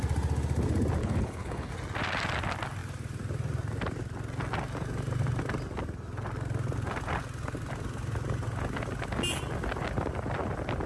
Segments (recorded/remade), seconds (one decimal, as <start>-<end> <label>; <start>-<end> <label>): 0.0-1.0 recorded; 1.0-1.7 remade; 1.7-10.9 recorded